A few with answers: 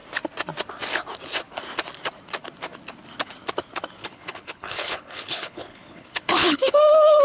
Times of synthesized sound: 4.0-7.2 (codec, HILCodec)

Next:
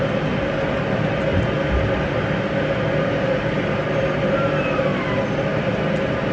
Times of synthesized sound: none

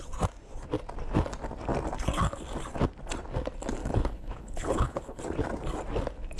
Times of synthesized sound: 3.8-5.2 (codec, HILCodec)